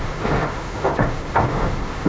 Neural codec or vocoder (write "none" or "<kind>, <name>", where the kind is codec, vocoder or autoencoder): autoencoder, DAC-VAE